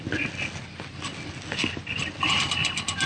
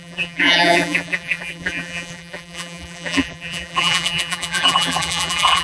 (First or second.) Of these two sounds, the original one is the first